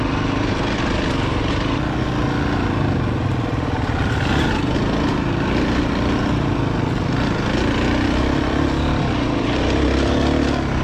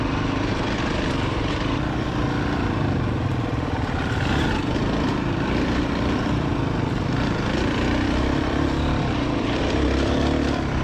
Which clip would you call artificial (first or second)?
second